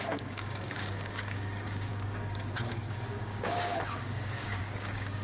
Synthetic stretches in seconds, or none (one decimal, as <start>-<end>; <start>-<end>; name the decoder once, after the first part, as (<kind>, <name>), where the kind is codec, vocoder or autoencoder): 0.0-5.2 (codec, DAC)